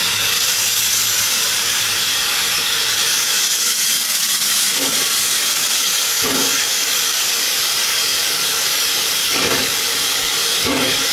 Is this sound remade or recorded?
remade